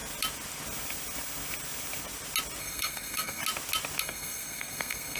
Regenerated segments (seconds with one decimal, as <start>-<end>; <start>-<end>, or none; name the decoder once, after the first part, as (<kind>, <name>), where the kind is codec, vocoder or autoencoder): 2.6-3.4 (codec, SNAC); 4.0-5.2